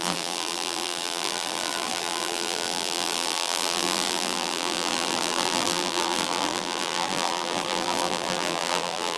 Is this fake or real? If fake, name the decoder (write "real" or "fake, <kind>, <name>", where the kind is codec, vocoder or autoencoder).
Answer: fake, vocoder, BigVGAN v2